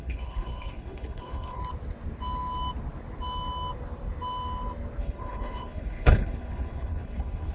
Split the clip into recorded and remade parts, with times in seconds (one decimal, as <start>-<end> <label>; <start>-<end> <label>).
0.0-1.6 remade; 1.6-5.0 recorded; 5.0-7.5 remade